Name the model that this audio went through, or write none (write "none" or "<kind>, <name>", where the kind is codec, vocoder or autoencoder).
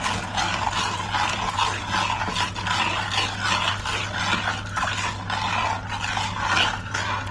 none